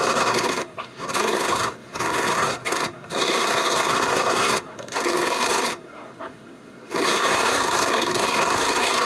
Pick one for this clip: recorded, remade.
remade